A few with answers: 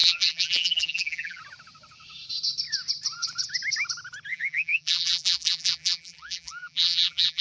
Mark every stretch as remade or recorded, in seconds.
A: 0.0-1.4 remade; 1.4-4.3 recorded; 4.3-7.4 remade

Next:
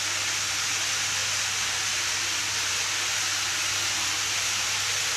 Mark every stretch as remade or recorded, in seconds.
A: 0.0-5.2 recorded

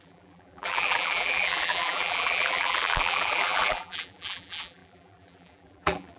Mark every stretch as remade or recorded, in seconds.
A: 0.0-6.2 remade

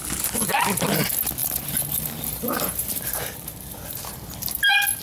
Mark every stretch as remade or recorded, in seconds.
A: 0.0-1.4 recorded; 1.4-4.4 remade; 4.4-5.0 recorded

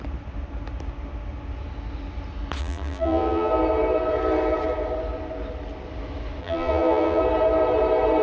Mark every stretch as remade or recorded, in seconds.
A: 0.0-2.6 recorded; 2.6-3.5 remade; 3.5-6.4 recorded; 6.4-7.2 remade; 7.2-8.2 recorded

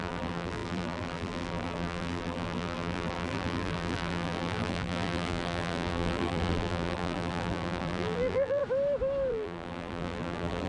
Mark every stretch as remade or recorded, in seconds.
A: 0.0-8.6 remade; 8.6-9.3 recorded; 9.3-10.7 remade

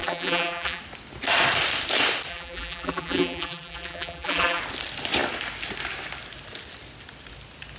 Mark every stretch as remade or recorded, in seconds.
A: 0.0-0.8 remade; 0.8-2.3 recorded; 2.3-4.6 remade; 4.6-7.8 recorded